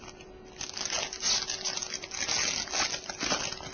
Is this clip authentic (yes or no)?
yes